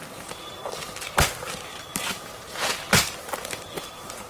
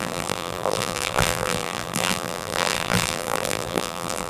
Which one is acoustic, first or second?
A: first